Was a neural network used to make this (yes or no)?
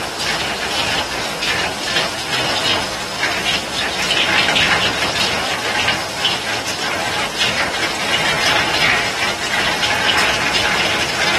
no